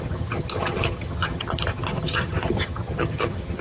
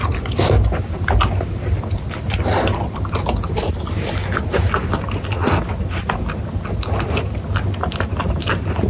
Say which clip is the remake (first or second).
first